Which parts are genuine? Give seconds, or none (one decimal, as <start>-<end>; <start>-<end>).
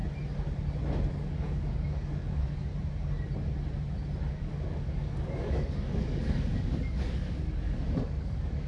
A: 0.0-1.1; 2.7-4.3